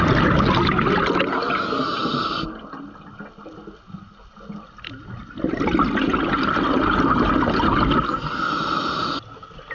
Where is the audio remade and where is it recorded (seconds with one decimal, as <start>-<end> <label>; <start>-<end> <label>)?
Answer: 0.0-9.7 recorded